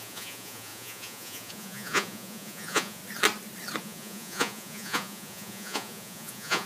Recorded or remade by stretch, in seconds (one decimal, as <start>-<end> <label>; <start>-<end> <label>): 0.0-3.0 remade; 3.0-3.8 recorded; 3.8-6.7 remade